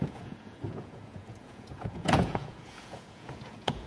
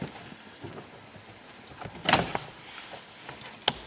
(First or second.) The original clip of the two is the second